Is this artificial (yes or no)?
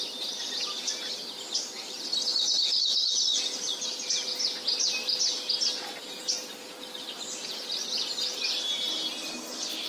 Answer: no